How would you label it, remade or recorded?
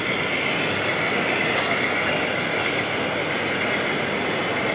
recorded